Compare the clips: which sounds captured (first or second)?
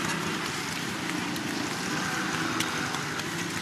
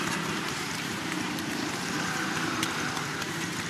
first